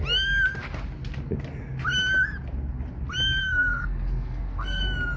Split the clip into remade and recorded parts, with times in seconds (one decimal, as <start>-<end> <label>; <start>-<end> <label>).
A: 0.0-3.4 recorded; 3.4-4.8 remade; 4.8-5.2 recorded